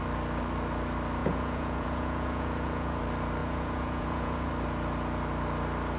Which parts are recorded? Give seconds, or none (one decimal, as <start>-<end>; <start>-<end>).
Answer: 0.0-1.2; 3.0-3.4; 4.5-6.0